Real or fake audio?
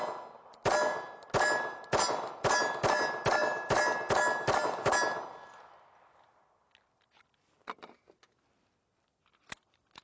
real